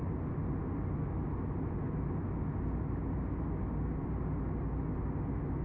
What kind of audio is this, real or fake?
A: real